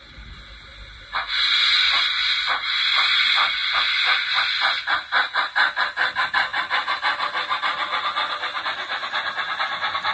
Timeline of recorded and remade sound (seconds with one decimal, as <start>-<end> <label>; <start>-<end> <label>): 0.0-10.1 recorded